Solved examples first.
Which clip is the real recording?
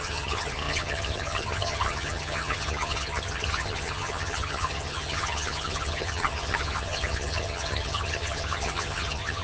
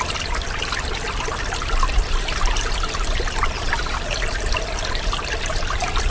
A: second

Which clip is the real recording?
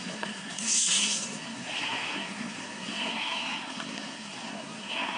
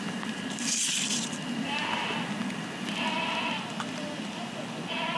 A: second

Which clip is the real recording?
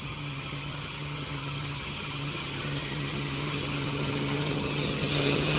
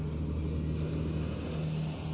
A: second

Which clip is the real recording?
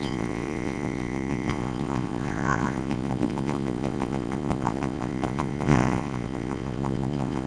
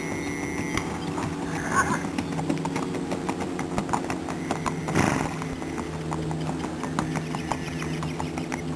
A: second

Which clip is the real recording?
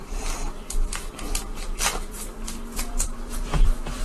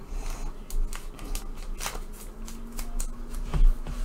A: second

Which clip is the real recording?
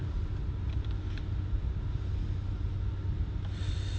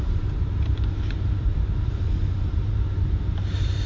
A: first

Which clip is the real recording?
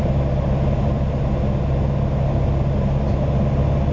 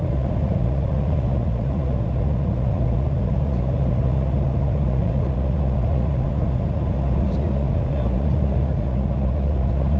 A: first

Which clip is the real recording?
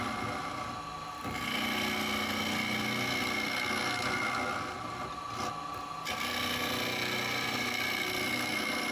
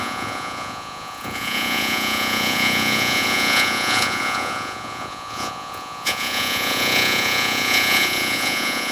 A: first